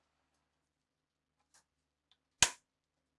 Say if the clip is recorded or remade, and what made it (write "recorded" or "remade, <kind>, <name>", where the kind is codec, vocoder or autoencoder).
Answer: recorded